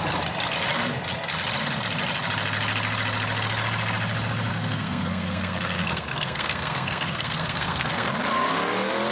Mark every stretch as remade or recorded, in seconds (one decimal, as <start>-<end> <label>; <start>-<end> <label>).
0.0-4.5 recorded; 4.5-8.1 remade; 8.1-9.1 recorded